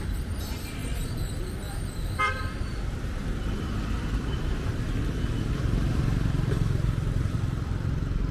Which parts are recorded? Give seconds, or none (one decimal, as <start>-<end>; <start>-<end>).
none